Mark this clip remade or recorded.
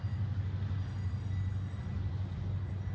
recorded